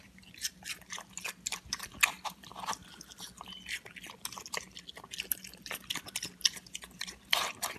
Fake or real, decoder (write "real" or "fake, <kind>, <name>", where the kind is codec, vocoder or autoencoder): real